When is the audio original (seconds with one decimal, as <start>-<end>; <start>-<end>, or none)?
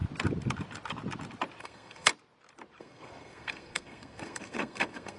0.0-1.6; 2.1-2.8